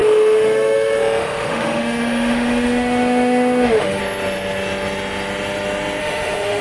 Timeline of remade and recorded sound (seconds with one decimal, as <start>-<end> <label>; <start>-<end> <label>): 0.0-4.0 remade; 4.0-6.0 recorded; 6.0-6.6 remade